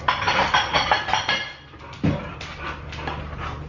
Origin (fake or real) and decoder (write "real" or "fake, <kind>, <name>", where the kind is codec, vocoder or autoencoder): real